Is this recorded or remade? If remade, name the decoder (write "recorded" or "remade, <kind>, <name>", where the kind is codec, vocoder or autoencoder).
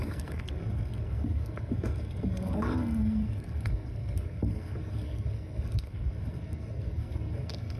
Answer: remade, codec, SNAC